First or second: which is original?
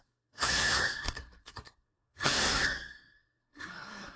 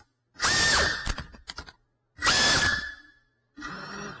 second